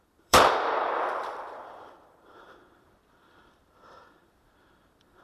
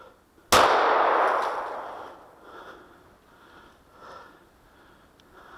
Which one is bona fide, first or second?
second